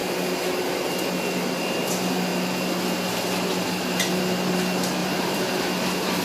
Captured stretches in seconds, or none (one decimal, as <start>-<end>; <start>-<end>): 0.0-5.0; 5.6-6.2